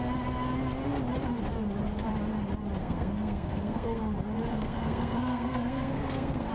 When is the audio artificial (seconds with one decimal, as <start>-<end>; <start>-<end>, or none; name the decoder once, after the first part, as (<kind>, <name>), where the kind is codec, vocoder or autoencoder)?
2.8-4.0 (codec, SNAC); 4.5-6.5